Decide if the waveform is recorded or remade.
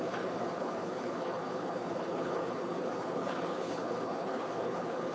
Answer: remade